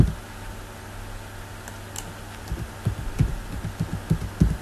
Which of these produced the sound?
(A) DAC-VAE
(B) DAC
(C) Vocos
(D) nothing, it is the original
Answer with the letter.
D